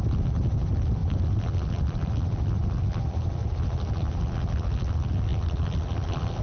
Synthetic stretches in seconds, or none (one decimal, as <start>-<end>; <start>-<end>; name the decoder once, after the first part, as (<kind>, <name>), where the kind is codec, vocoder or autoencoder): none